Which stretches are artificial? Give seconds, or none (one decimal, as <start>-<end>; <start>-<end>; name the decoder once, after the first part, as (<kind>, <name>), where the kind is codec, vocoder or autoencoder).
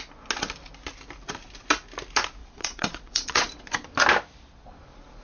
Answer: 2.4-3.5 (vocoder, Vocos)